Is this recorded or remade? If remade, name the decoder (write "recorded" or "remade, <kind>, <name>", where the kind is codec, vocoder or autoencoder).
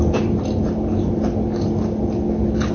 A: recorded